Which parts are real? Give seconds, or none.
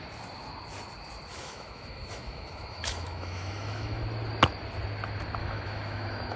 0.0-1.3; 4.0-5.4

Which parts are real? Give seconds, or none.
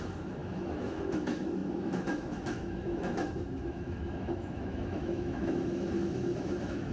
none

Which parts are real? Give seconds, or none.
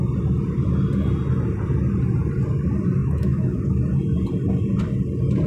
0.0-3.0; 3.6-5.5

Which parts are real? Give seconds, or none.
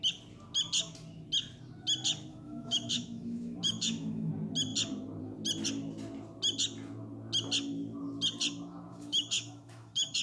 0.0-2.3; 4.3-8.9